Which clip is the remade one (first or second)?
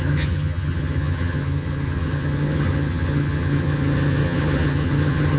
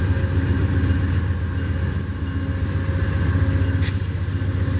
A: first